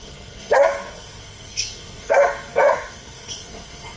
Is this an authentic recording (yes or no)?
no